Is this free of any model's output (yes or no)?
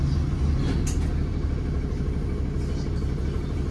yes